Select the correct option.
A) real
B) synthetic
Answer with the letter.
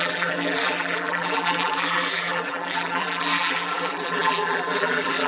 B